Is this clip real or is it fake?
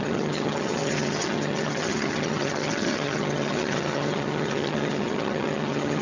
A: fake